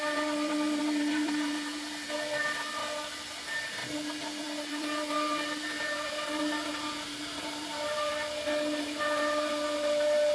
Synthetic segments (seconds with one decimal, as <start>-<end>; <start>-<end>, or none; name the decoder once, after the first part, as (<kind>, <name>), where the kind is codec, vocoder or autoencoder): 0.0-2.8 (vocoder, BigVGAN v2); 3.3-3.8; 4.4-8.1; 8.8-10.3